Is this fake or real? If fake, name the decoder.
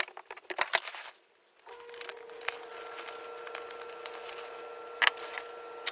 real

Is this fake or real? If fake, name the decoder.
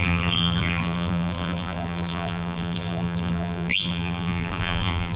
fake, vocoder, BigVGAN v2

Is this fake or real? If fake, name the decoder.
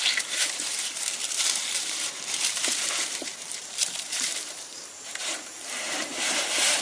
fake, vocoder, BigVGAN v2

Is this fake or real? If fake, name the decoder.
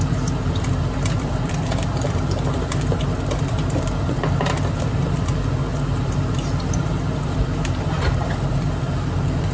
fake, vocoder, BigVGAN v2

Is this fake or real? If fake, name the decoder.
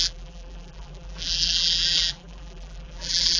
fake, vocoder, BigVGAN v2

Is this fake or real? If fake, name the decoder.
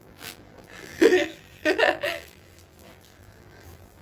fake, vocoder, BigVGAN v2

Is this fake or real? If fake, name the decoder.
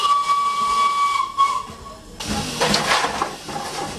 real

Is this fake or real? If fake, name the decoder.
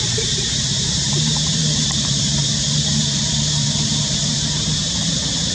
fake, vocoder, BigVGAN v2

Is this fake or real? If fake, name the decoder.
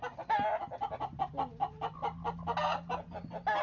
real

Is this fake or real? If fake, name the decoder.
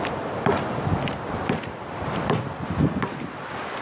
fake, vocoder, BigVGAN v2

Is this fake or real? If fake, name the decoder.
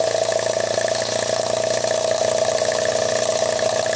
real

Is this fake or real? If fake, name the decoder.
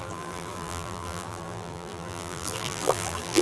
fake, vocoder, BigVGAN v2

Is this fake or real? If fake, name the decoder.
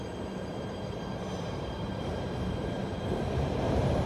fake, vocoder, BigVGAN v2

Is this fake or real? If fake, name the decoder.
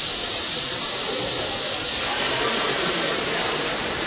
fake, vocoder, BigVGAN v2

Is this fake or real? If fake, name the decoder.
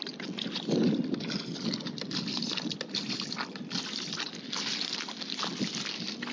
real